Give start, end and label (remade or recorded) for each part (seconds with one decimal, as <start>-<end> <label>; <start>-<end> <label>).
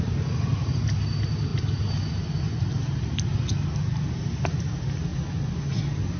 0.0-5.1 recorded; 5.1-5.8 remade; 5.8-6.2 recorded